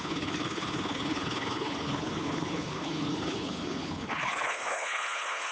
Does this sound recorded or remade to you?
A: remade